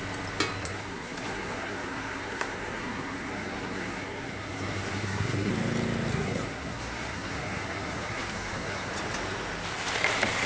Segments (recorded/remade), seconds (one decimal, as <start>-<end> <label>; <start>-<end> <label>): 0.0-0.6 recorded; 0.6-5.5 remade; 5.5-6.1 recorded; 6.1-8.9 remade; 8.9-10.5 recorded